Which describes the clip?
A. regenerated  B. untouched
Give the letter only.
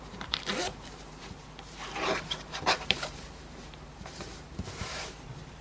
A